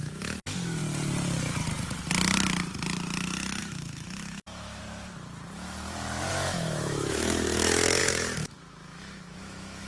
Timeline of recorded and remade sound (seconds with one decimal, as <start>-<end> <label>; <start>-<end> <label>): 0.0-0.8 remade; 0.8-3.6 recorded; 3.6-4.8 remade; 4.8-6.3 recorded; 6.3-9.9 remade